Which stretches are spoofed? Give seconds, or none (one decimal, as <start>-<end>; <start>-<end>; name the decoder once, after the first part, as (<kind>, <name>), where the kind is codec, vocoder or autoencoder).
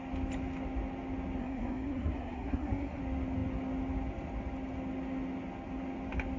1.4-3.0 (codec, SNAC)